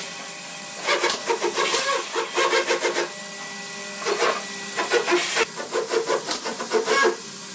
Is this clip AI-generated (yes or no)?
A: no